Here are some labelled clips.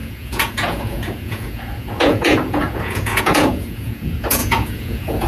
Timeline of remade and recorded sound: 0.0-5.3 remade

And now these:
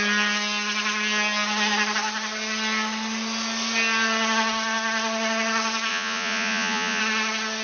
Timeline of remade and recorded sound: 0.0-5.9 recorded; 5.9-7.0 remade; 7.0-7.6 recorded